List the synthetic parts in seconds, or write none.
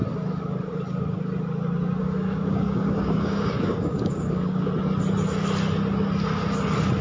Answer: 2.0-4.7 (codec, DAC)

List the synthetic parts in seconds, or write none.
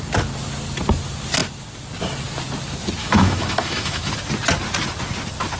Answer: 3.0-4.1 (autoencoder, DAC-VAE)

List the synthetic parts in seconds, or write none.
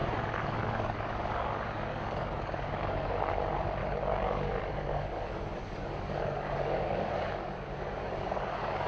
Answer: 0.0-3.3 (codec, DAC); 3.8-8.9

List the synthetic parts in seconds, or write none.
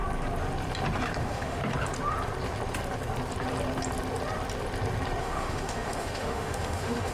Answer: 1.2-1.6 (autoencoder, DAC-VAE); 5.2-7.1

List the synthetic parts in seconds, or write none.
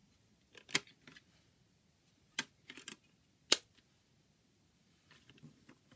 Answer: none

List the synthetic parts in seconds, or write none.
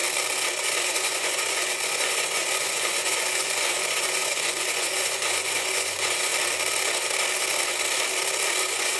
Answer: 0.6-6.3 (vocoder, Vocos); 8.6-9.0